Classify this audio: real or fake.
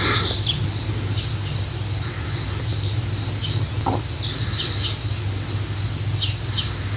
real